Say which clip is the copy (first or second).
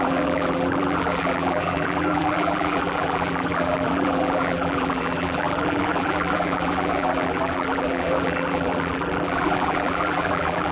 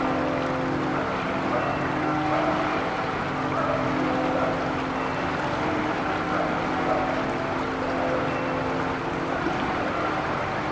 first